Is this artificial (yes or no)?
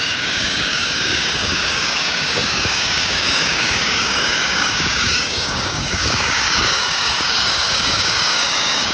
yes